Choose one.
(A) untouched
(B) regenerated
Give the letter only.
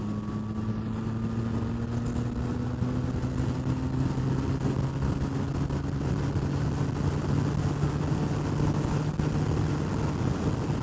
A